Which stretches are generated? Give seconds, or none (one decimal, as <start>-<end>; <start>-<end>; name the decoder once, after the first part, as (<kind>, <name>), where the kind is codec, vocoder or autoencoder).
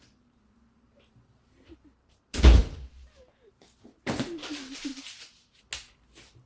none